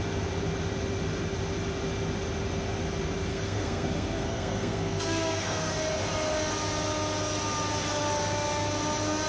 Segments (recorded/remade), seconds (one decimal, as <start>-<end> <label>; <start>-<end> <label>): 0.0-3.3 recorded; 3.3-5.7 remade; 5.7-9.3 recorded

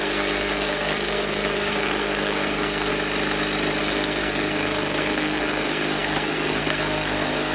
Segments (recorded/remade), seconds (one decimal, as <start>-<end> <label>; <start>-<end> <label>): 0.0-2.9 remade; 2.9-3.8 recorded; 3.8-7.5 remade

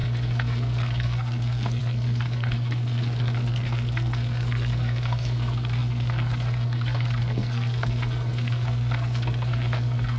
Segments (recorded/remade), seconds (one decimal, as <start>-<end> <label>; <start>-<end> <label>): 0.0-10.2 remade

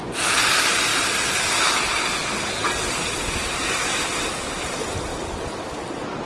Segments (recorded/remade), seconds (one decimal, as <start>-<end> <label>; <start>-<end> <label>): 0.0-6.3 recorded